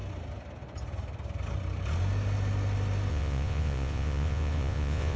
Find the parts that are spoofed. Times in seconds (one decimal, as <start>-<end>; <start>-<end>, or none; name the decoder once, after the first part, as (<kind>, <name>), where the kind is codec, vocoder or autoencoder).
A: 3.1-5.2 (vocoder, Vocos)